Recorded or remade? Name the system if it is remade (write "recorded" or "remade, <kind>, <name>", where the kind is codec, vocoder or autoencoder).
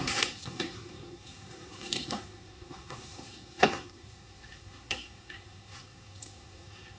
remade, codec, SNAC